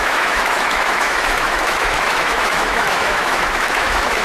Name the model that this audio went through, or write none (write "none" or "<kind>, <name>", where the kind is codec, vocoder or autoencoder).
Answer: autoencoder, DAC-VAE